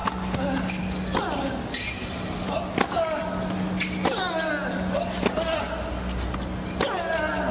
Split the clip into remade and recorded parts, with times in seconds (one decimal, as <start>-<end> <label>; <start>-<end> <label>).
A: 0.0-7.5 recorded

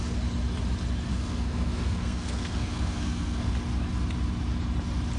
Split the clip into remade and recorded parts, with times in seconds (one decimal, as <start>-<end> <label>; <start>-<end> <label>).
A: 0.0-1.1 recorded; 1.1-3.5 remade; 3.5-5.2 recorded

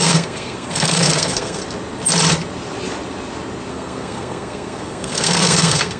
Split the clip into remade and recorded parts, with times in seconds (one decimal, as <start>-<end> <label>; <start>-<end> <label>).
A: 0.0-1.6 remade; 1.6-3.7 recorded; 3.7-6.0 remade

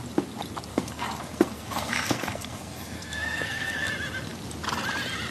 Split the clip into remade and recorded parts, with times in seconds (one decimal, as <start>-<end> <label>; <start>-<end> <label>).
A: 0.0-0.7 recorded; 0.7-3.9 remade; 3.9-5.3 recorded

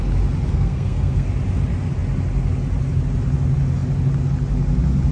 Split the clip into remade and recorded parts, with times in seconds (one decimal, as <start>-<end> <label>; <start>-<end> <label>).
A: 0.0-0.5 recorded; 0.5-1.3 remade; 1.3-5.1 recorded

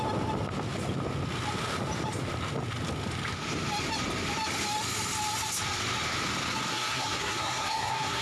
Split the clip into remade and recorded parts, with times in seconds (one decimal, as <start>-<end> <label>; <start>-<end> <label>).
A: 0.0-6.7 recorded; 6.7-8.2 remade

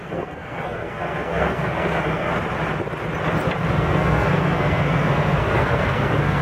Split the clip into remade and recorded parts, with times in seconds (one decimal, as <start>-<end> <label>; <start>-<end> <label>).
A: 0.0-2.3 remade; 2.3-3.7 recorded; 3.7-6.4 remade

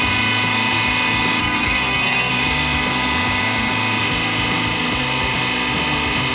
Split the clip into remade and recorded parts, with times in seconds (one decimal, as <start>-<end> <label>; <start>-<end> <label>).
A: 0.0-1.4 recorded; 1.4-2.3 remade; 2.3-6.3 recorded